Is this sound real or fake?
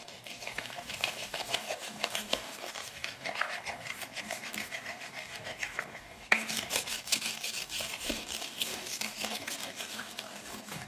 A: fake